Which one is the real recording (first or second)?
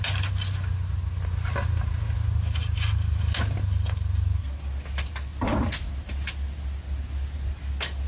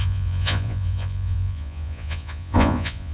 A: first